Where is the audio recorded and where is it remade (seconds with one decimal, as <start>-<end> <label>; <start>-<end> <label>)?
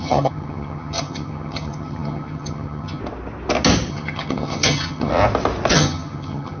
0.0-3.0 remade; 3.0-3.9 recorded; 3.9-5.1 remade; 5.1-5.7 recorded; 5.7-6.6 remade